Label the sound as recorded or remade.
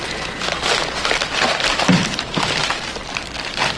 recorded